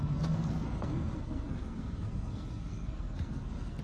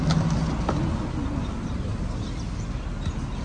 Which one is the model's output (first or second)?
first